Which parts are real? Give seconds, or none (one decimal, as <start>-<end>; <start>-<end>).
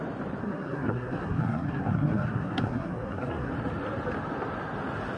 0.0-0.4; 3.5-5.2